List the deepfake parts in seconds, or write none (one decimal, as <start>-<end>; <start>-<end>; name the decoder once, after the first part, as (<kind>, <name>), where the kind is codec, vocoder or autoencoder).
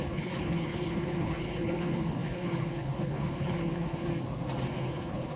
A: 0.0-4.1 (codec, HILCodec); 4.7-5.4